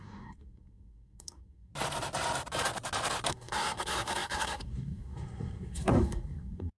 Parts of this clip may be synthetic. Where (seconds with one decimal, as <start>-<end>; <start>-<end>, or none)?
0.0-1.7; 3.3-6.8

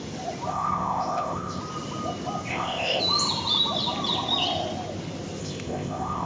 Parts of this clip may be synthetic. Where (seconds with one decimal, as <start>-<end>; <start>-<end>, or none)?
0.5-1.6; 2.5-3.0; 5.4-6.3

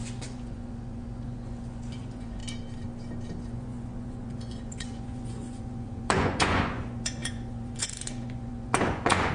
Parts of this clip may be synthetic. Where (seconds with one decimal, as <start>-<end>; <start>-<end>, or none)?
0.0-2.4; 3.4-9.3

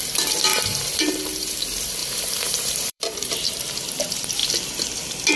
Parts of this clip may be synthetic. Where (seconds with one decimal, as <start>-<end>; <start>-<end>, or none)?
0.5-1.5; 2.0-3.3

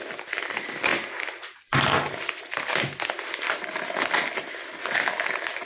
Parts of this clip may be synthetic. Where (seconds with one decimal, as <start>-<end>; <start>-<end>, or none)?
none

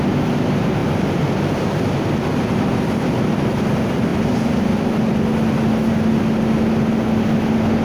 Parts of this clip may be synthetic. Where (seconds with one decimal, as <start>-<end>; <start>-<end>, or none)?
none

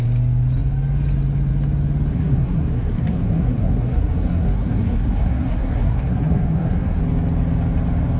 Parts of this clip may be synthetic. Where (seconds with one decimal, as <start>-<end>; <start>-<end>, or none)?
2.1-7.0